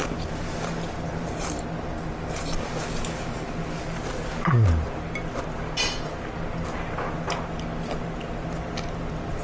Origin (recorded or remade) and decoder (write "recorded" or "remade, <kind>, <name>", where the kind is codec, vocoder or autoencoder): recorded